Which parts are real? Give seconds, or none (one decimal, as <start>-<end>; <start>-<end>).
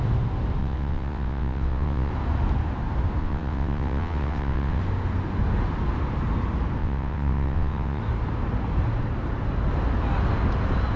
0.0-0.6; 2.1-3.2; 4.8-6.8; 8.0-11.0